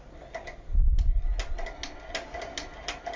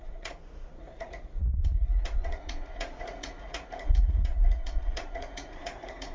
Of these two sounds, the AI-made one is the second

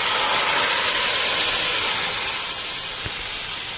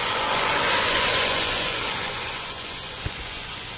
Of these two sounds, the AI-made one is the second